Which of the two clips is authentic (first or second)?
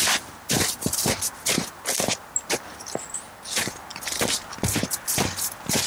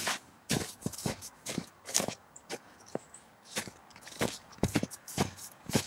first